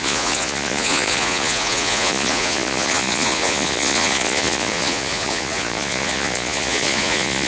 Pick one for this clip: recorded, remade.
remade